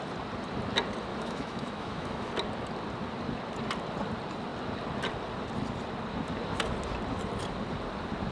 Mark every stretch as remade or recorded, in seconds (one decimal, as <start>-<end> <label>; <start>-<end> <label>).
0.0-1.1 recorded; 1.1-2.3 remade; 2.3-8.3 recorded